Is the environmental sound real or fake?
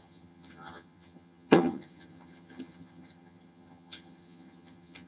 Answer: fake